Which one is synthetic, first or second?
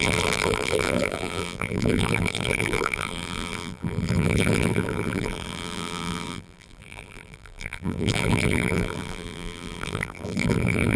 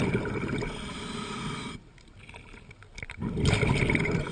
first